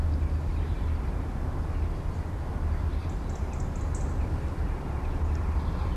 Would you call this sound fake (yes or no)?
no